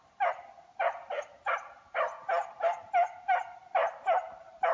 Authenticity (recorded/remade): recorded